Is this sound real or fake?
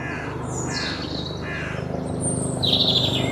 real